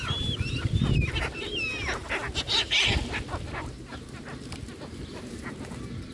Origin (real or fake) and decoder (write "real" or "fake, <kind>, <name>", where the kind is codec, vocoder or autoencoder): real